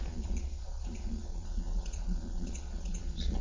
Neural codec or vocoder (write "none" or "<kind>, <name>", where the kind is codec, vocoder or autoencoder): vocoder, Vocos